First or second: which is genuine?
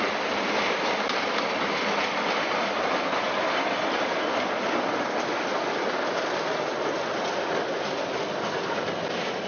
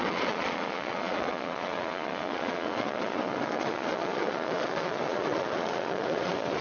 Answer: first